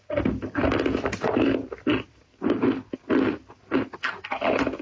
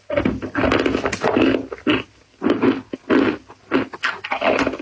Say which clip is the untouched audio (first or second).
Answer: second